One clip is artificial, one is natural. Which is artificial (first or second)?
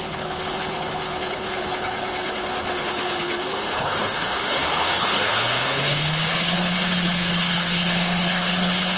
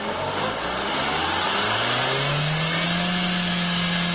first